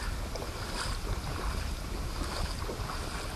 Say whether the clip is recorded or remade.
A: recorded